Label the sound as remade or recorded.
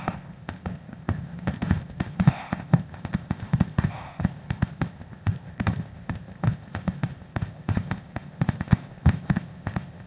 remade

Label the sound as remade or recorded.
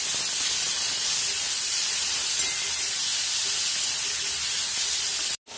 recorded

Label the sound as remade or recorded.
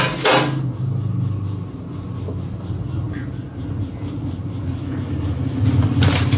recorded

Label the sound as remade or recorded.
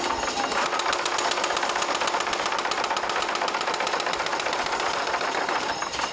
recorded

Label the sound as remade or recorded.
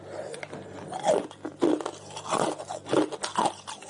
recorded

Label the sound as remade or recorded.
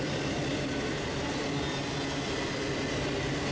recorded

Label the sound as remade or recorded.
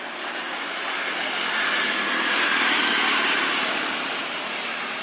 recorded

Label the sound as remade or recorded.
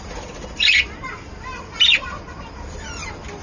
recorded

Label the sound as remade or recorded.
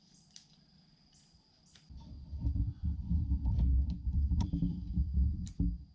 remade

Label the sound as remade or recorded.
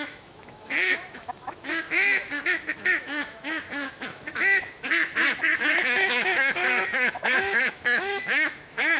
remade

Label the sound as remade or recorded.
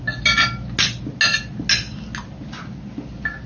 recorded